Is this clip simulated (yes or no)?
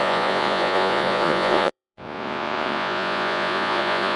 yes